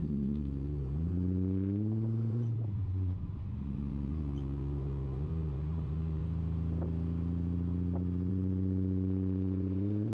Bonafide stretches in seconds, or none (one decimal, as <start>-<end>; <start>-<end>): 6.2-8.3